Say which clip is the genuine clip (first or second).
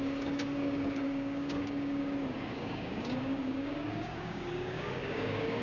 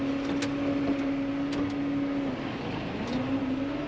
second